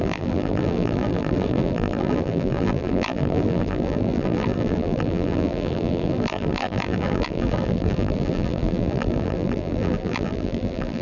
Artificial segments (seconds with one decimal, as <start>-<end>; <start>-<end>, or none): 0.0-11.0